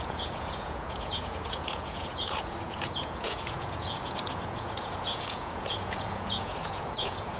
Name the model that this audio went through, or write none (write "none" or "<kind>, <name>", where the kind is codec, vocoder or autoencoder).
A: vocoder, Vocos